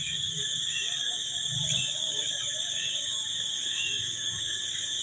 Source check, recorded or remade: remade